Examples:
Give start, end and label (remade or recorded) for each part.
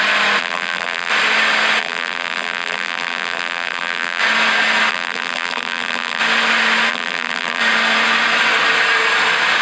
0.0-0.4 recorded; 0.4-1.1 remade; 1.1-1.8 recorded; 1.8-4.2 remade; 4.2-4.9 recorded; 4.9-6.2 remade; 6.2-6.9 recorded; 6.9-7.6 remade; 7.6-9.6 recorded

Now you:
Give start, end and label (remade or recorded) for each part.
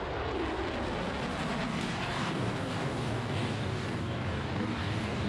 0.0-1.7 recorded; 1.7-5.3 remade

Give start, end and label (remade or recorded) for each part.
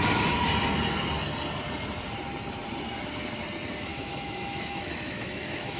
0.0-3.9 recorded; 3.9-5.8 remade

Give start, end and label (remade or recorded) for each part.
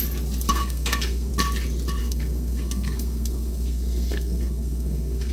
0.0-0.5 recorded; 0.5-1.3 remade; 1.3-2.0 recorded; 2.0-5.3 remade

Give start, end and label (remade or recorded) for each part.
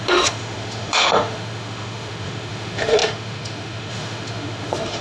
0.0-5.0 remade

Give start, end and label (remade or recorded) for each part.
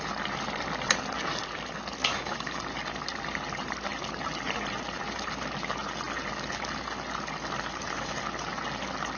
0.0-2.0 recorded; 2.0-2.6 remade; 2.6-9.2 recorded